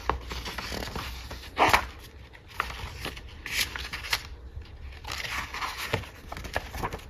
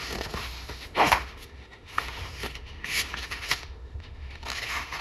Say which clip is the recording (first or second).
first